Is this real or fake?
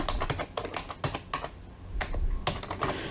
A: real